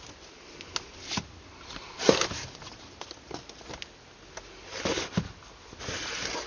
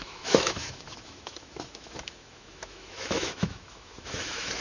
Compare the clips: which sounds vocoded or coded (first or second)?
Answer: second